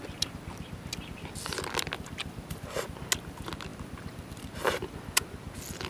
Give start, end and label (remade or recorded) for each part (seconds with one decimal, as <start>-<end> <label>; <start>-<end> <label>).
0.0-5.9 recorded